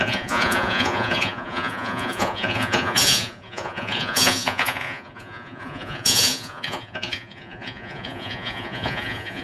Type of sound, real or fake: fake